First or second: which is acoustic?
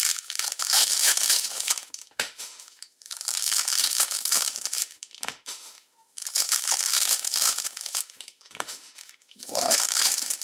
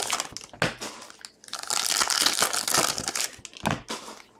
second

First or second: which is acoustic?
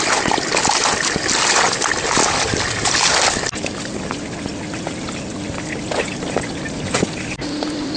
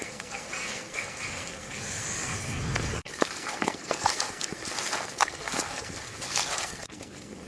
first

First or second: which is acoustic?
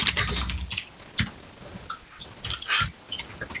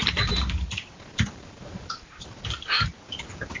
first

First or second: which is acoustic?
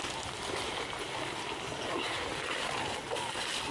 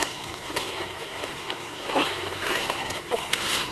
first